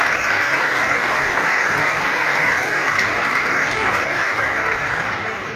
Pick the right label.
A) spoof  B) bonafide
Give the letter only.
A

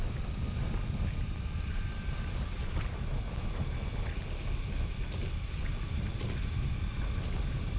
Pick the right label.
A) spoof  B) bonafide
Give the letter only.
B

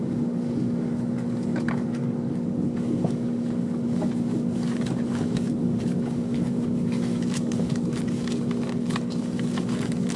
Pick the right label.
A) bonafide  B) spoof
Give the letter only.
B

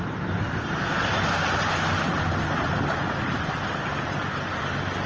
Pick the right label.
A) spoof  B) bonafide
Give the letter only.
B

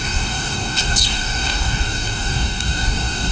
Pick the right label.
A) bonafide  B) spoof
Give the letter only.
B